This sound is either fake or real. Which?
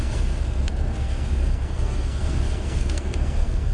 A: fake